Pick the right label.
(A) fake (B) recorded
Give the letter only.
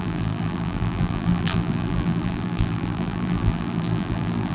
A